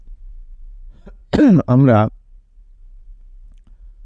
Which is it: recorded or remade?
remade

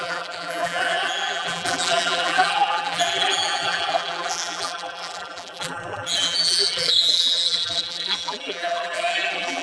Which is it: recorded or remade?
remade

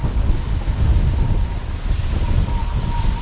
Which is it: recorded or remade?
recorded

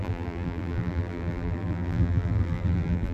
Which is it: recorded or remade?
remade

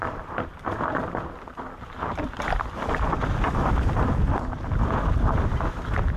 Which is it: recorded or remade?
remade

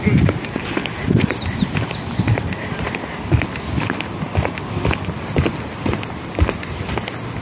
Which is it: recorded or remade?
recorded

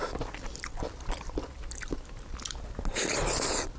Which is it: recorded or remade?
recorded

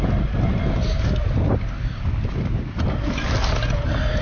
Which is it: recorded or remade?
recorded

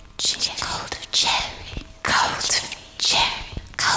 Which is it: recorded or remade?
recorded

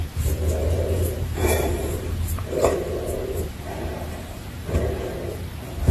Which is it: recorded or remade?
remade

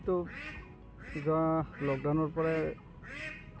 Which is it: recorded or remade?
recorded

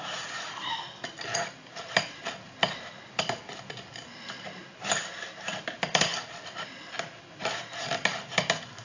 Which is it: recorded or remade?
remade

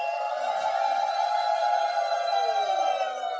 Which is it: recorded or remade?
recorded